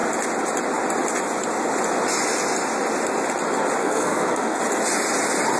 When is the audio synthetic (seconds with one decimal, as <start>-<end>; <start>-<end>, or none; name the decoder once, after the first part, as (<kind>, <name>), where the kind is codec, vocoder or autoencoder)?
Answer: 3.8-4.6 (codec, SNAC)